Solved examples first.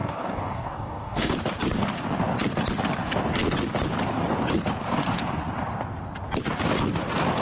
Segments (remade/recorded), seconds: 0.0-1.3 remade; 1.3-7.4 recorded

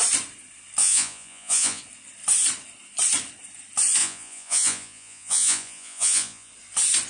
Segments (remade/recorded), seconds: 0.0-0.8 recorded; 0.8-1.8 remade; 1.8-4.0 recorded; 4.0-6.5 remade; 6.5-7.1 recorded